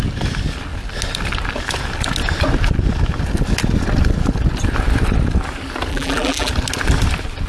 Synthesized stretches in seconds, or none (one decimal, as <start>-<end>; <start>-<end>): 5.9-6.5